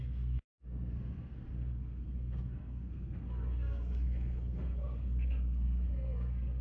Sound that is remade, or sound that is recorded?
remade